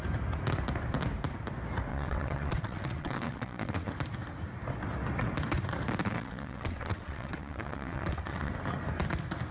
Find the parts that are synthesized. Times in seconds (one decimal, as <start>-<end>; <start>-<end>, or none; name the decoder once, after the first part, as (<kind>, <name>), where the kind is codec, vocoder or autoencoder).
1.9-3.9 (vocoder, WaveNeXt); 6.1-8.5